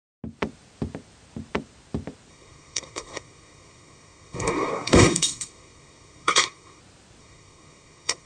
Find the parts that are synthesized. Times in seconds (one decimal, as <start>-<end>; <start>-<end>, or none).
2.3-6.8; 7.2-8.3